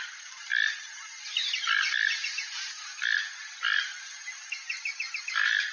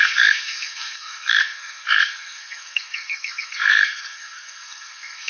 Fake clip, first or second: second